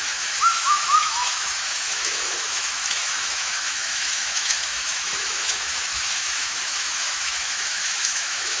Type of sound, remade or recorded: remade